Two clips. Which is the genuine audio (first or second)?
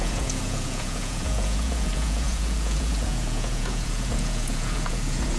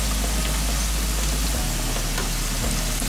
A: second